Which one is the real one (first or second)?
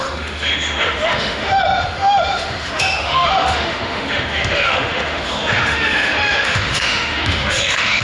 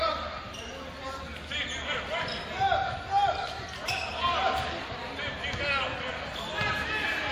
second